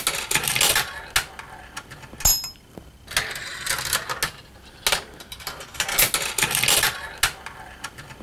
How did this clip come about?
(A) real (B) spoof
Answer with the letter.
A